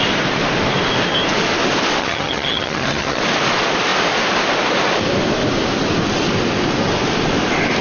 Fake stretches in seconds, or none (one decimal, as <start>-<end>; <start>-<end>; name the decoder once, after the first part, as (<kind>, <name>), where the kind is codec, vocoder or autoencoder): 2.0-3.2 (vocoder, HiFi-GAN)